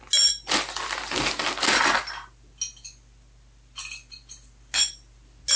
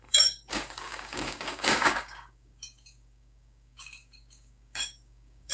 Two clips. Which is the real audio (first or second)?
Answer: first